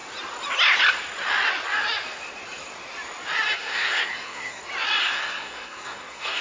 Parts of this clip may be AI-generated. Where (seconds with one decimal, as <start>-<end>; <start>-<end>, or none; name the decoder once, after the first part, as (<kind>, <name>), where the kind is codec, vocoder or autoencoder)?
3.6-4.6 (codec, SNAC); 5.0-6.4